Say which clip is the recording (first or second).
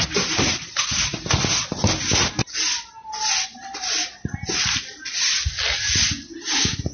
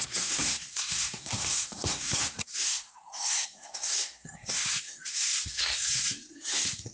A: first